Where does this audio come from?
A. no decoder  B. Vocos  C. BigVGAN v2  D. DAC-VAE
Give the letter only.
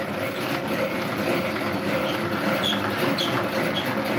A